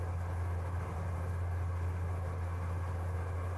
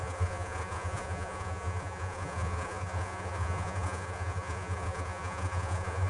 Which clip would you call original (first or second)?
first